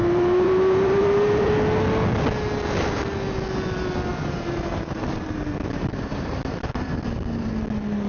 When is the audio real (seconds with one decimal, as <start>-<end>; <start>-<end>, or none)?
1.5-4.1; 7.5-8.1